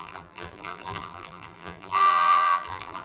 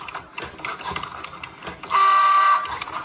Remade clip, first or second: first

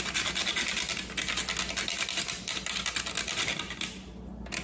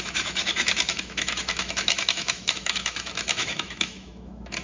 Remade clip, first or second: second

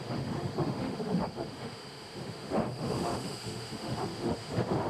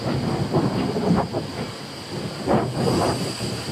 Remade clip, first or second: first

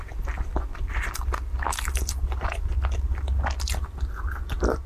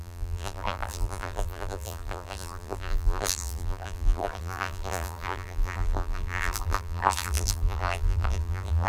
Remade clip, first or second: second